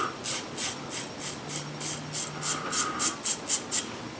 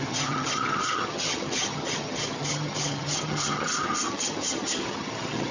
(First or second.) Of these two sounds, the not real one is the second